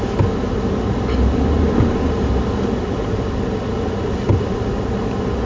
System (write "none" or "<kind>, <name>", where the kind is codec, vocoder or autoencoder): none